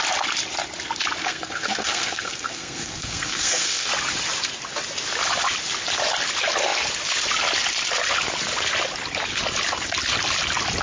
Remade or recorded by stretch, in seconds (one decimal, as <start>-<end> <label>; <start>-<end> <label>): 0.0-1.2 recorded; 1.2-3.9 remade; 3.9-10.8 recorded